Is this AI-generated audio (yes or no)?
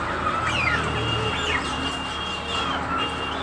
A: no